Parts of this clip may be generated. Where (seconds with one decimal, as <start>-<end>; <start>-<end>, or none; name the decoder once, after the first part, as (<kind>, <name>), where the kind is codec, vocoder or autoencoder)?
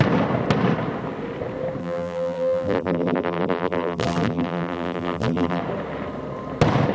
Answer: 1.8-5.6 (vocoder, BigVGAN v2)